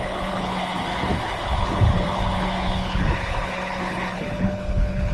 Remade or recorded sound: remade